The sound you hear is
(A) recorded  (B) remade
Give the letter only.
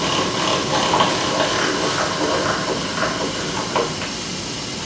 A